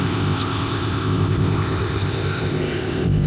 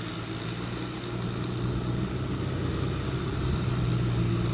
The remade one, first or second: first